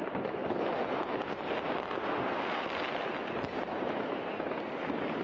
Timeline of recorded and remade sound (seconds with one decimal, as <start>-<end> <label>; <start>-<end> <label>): 0.0-5.2 recorded